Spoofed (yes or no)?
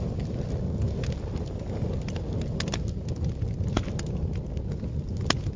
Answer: no